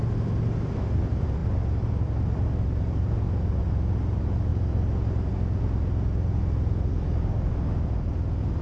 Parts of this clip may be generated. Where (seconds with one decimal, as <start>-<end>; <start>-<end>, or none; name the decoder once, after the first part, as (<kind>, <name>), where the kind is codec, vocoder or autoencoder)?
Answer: 6.9-7.5 (codec, DAC)